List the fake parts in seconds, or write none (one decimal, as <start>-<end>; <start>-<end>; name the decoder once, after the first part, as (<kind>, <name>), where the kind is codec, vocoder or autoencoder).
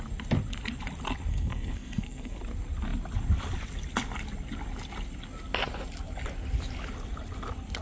1.3-2.4 (codec, SNAC)